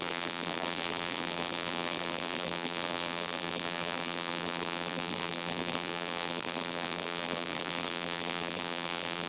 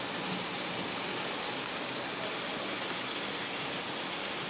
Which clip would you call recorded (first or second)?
second